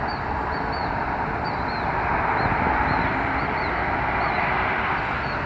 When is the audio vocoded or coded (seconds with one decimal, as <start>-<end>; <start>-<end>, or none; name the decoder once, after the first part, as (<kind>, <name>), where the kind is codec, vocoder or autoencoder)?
none

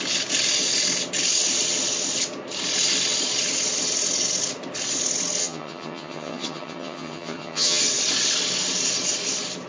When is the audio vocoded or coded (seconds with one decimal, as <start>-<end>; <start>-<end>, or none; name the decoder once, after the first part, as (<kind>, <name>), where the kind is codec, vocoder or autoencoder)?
5.4-7.8 (vocoder, HiFi-GAN)

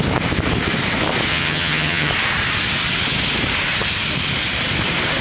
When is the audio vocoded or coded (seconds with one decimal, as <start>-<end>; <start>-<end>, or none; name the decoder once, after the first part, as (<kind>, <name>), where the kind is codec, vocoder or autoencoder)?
1.3-2.1 (vocoder, HiFi-GAN)